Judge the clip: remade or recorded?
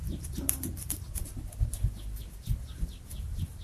recorded